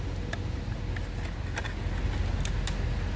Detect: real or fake real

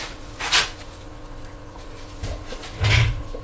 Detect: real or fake fake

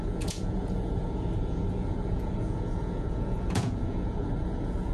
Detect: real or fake fake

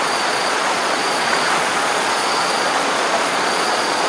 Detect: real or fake fake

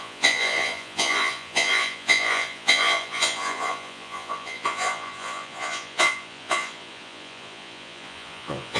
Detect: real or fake fake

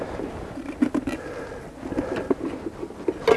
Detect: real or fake real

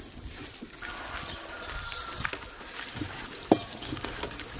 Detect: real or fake real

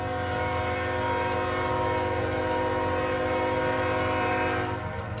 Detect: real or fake real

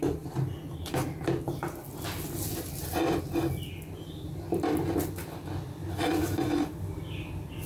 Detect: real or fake real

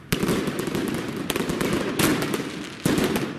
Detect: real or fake real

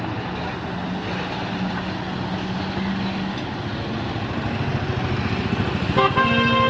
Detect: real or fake real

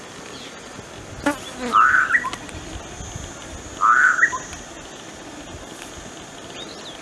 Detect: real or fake real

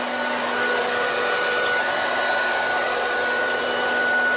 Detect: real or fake real